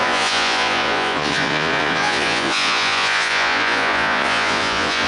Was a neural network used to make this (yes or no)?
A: yes